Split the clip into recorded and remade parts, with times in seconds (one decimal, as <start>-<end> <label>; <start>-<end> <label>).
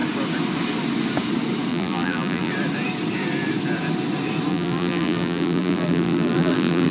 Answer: 0.0-1.7 recorded; 1.7-2.5 remade; 2.5-4.5 recorded; 4.5-6.9 remade